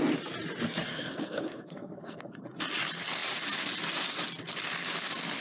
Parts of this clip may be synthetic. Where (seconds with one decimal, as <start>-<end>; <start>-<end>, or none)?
0.9-2.2